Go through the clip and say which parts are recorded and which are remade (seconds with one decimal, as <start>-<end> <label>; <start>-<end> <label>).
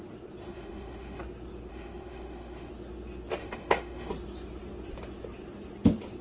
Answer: 0.0-0.4 recorded; 0.4-1.2 remade; 1.2-1.7 recorded; 1.7-2.7 remade; 2.7-3.4 recorded; 3.4-4.1 remade; 4.1-6.2 recorded